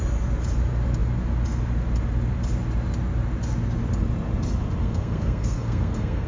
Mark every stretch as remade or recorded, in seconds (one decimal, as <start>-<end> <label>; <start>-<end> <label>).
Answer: 0.0-4.8 recorded; 4.8-6.3 remade